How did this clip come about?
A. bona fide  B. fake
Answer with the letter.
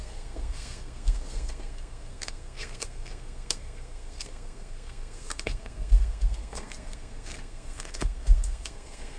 B